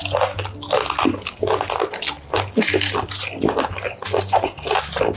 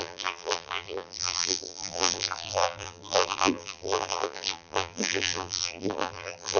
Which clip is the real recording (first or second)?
first